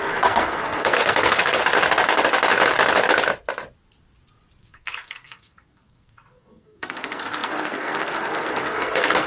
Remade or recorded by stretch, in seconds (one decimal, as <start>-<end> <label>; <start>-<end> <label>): 0.0-1.6 remade; 1.6-4.6 recorded; 4.6-9.3 remade